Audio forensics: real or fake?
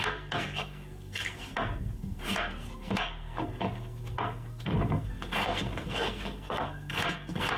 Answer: fake